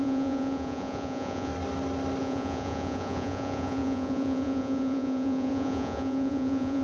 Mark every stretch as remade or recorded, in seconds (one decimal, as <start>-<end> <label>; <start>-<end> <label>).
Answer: 0.0-1.5 remade; 1.5-2.2 recorded; 2.2-6.8 remade